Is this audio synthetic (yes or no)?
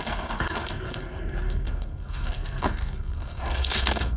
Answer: yes